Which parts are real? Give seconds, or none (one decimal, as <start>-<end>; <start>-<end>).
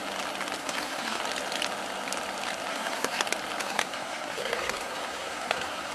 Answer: 0.0-0.6; 1.2-2.7; 3.2-3.6